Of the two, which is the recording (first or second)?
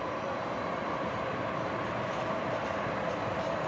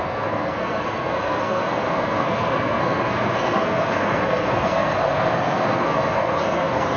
first